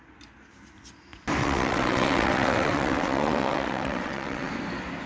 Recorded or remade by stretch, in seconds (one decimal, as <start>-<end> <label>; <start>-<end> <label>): 0.0-1.4 recorded; 1.4-4.5 remade; 4.5-5.1 recorded